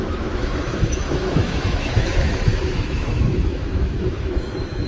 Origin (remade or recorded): remade